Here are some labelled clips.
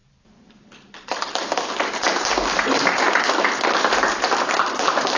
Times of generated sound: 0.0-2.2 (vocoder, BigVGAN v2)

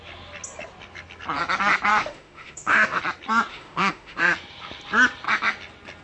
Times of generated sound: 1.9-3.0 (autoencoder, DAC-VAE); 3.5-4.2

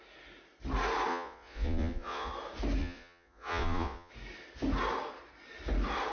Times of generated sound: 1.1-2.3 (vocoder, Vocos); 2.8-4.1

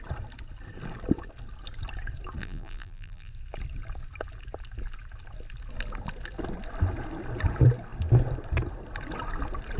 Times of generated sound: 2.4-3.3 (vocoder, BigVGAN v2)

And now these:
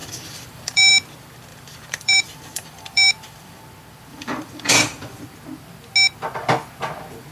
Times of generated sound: 0.0-0.9 (vocoder, BigVGAN v2); 1.5-3.6; 4.1-5.2

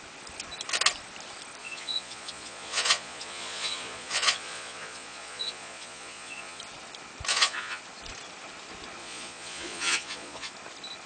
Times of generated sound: 1.6-6.6 (vocoder, Vocos); 7.3-7.8; 9.0-10.5